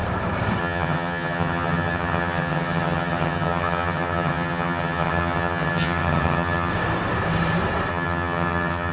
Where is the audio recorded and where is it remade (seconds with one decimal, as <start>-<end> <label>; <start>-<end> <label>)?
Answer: 0.0-0.6 recorded; 0.6-6.7 remade; 6.7-7.9 recorded; 7.9-8.9 remade